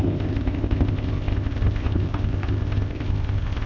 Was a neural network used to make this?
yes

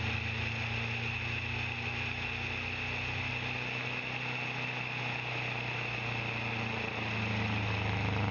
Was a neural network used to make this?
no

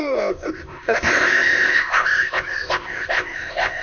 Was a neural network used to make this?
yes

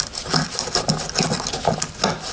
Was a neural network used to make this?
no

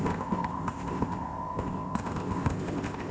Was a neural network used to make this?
yes